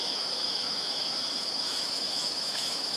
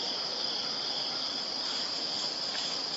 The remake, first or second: first